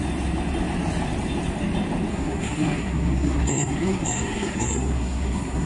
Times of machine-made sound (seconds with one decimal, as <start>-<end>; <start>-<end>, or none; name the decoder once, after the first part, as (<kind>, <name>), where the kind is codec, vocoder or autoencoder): 2.1-5.7 (codec, SNAC)